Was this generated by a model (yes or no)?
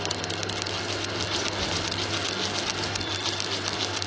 no